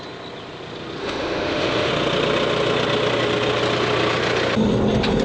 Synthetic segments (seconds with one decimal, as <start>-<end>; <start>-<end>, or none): 1.0-1.9